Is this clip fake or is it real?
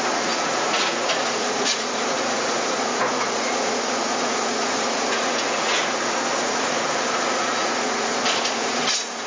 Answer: fake